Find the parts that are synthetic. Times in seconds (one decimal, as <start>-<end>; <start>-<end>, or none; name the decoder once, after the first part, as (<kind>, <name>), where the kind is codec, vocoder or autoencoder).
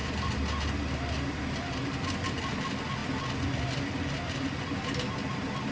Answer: 0.0-2.4 (vocoder, BigVGAN v2)